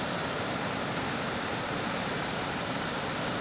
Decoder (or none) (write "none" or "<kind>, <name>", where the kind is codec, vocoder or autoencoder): vocoder, BigVGAN v2